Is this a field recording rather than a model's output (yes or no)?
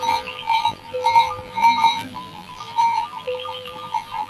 no